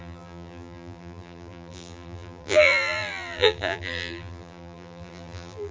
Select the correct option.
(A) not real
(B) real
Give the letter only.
A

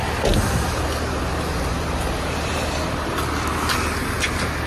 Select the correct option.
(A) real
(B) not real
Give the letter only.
A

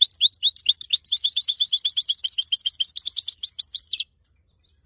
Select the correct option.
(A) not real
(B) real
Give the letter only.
A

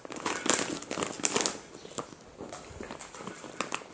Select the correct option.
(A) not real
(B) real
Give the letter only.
B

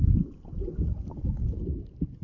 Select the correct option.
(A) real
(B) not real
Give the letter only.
A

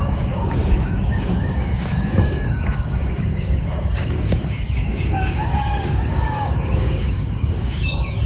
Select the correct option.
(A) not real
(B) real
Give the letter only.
A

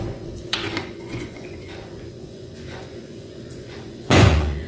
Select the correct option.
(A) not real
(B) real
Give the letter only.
A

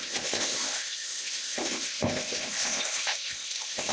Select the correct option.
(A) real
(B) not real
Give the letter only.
B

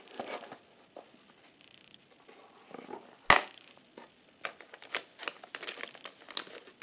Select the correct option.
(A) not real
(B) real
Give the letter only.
B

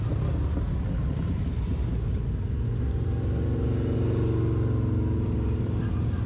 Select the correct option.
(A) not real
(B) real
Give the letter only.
B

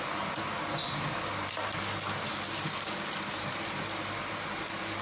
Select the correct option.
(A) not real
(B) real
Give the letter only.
B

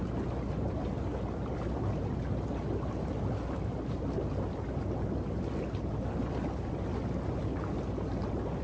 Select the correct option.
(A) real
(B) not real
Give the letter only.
A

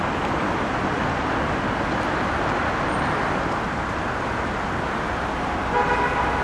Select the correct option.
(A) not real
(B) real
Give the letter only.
B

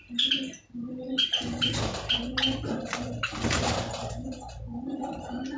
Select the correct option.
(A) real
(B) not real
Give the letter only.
A